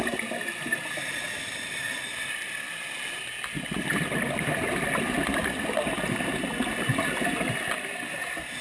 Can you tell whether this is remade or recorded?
recorded